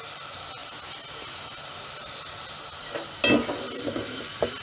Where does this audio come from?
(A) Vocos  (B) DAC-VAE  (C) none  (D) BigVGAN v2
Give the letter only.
C